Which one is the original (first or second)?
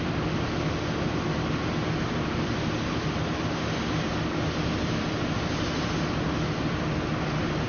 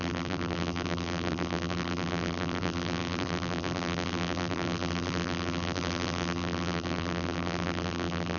first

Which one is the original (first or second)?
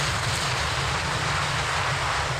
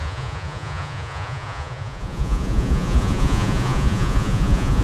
first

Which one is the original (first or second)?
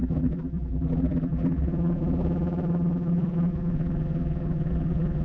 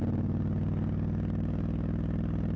second